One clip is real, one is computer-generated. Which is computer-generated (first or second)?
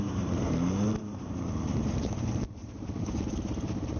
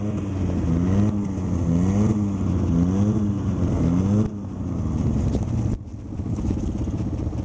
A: first